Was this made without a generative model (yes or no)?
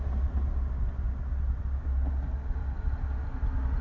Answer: yes